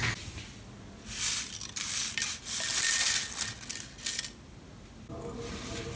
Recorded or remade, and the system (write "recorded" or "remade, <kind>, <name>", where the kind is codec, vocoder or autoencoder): recorded